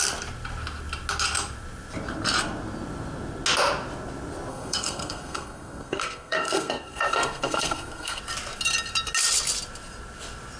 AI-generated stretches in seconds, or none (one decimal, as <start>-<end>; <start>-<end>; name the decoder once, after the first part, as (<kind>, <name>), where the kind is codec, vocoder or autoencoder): 4.5-8.2 (codec, SNAC)

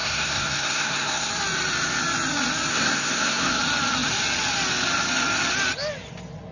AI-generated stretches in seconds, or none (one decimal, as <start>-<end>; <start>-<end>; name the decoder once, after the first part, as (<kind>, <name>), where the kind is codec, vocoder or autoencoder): 0.0-1.3 (codec, SNAC); 2.7-3.6